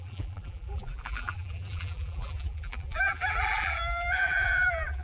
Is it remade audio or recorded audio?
remade